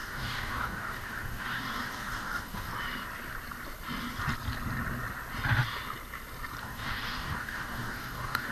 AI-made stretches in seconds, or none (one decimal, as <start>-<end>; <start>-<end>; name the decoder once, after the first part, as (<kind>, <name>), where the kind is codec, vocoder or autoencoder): 0.0-2.7 (codec, DAC); 6.6-8.5